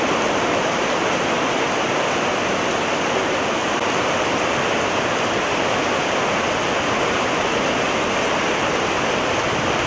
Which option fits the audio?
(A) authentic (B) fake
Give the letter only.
A